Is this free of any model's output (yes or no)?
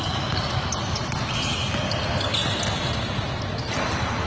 yes